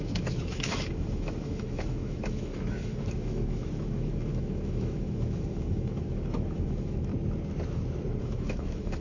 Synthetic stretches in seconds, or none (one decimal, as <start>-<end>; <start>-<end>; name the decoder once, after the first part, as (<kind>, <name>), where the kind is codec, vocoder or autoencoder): 0.0-7.1 (autoencoder, DAC-VAE); 8.2-9.0